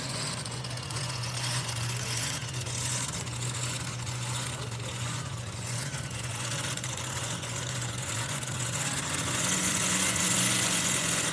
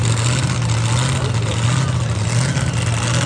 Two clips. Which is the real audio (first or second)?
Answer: second